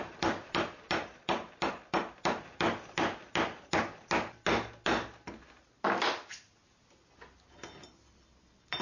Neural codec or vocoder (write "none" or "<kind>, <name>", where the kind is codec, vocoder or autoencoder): none